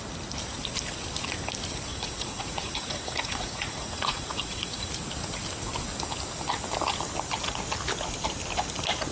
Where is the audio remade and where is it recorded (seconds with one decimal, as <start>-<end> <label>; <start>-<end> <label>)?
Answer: 0.0-1.9 recorded; 1.9-4.9 remade; 4.9-9.1 recorded